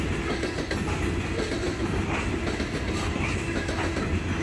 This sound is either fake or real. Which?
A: real